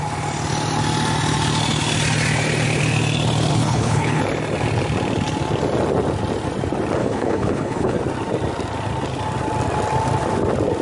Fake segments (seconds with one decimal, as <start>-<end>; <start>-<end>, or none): 3.5-4.2; 7.0-8.0